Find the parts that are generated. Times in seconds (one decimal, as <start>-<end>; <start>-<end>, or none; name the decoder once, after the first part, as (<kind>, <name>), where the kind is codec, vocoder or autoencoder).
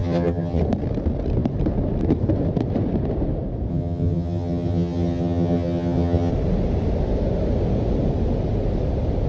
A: 0.0-0.6 (vocoder, HiFi-GAN); 3.7-6.3